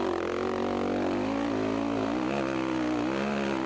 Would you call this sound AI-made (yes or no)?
no